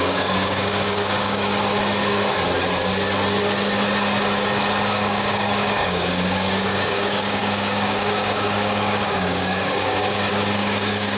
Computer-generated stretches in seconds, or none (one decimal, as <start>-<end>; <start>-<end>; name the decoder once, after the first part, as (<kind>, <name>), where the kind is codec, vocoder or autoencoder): 0.0-1.5 (codec, DAC); 4.9-11.2